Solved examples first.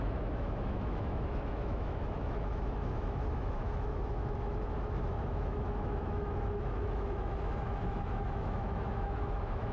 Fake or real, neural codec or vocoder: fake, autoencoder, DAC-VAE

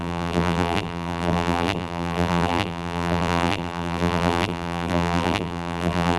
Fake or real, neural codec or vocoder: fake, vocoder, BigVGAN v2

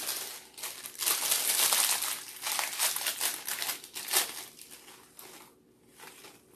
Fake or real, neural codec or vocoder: real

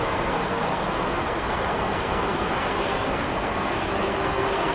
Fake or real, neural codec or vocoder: fake, codec, SNAC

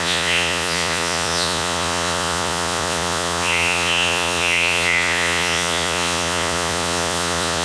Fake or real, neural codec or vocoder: fake, vocoder, Vocos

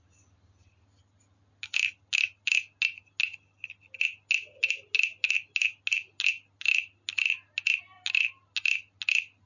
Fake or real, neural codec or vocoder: real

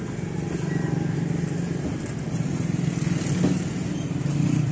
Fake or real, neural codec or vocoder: real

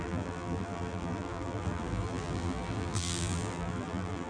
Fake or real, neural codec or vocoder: fake, vocoder, BigVGAN v2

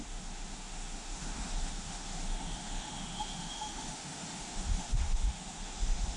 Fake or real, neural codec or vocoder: fake, autoencoder, DAC-VAE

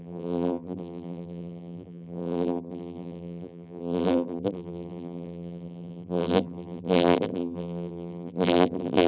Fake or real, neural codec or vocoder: fake, vocoder, BigVGAN v2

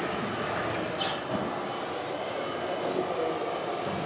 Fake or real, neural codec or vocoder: real